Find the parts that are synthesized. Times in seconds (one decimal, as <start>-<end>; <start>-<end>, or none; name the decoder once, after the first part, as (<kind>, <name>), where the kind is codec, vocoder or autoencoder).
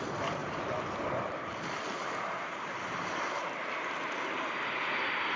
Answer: 0.4-3.6 (vocoder, BigVGAN v2)